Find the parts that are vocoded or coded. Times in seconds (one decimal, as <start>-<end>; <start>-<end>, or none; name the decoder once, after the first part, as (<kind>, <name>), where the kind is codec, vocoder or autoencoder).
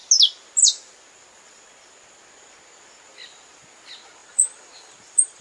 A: 4.2-5.4 (vocoder, BigVGAN v2)